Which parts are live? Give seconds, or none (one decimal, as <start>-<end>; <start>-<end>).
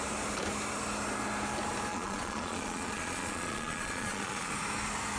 0.0-1.9; 4.5-5.2